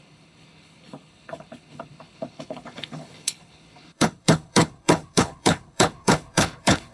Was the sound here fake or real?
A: fake